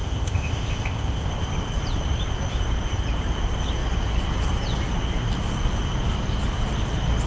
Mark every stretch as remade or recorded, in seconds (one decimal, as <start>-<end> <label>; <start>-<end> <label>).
0.0-1.3 remade; 1.3-7.3 recorded